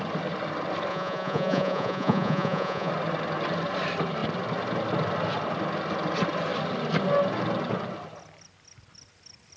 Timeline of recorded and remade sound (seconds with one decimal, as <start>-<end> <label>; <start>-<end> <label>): 0.0-0.9 recorded; 0.9-2.9 remade; 2.9-9.6 recorded